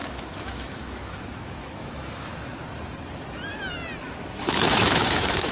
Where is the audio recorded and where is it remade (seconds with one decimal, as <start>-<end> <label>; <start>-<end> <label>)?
0.0-2.3 remade; 2.3-4.0 recorded; 4.0-5.5 remade